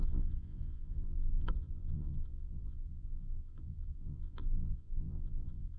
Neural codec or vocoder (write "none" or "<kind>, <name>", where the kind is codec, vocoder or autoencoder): vocoder, Vocos